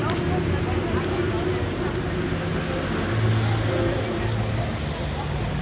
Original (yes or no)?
yes